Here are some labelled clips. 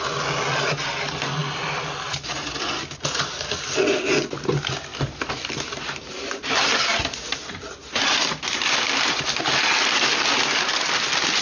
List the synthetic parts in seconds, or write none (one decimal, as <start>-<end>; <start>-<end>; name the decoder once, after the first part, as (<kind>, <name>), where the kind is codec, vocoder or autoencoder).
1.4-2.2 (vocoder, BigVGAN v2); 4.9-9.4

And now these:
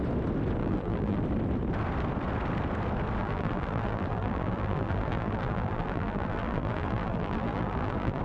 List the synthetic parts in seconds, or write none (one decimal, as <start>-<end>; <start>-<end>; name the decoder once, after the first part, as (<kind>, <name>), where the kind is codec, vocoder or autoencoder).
0.6-1.2 (vocoder, BigVGAN v2); 3.2-8.2

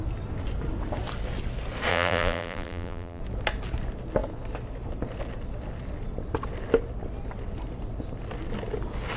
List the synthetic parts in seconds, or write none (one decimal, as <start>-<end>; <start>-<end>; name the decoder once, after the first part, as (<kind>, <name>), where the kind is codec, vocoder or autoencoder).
1.9-3.2 (vocoder, BigVGAN v2)

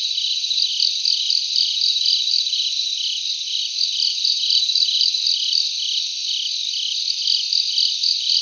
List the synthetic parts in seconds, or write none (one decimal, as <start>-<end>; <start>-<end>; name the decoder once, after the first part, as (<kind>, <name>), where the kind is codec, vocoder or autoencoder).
none

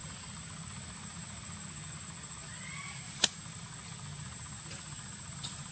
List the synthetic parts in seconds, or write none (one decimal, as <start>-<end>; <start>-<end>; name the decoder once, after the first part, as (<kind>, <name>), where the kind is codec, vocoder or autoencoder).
none

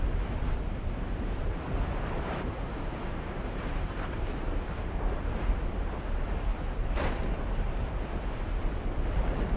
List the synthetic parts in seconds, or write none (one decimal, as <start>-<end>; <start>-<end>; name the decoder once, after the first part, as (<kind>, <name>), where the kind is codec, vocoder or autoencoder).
1.4-5.5 (vocoder, BigVGAN v2); 6.5-7.9

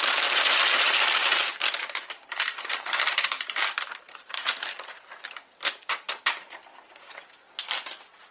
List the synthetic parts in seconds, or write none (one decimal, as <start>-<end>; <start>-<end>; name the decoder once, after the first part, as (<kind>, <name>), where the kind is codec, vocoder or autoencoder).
1.2-6.2 (vocoder, BigVGAN v2)